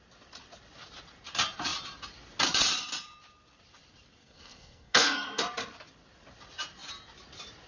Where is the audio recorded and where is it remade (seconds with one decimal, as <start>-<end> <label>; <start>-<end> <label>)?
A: 0.0-4.2 recorded; 4.2-5.4 remade; 5.4-7.7 recorded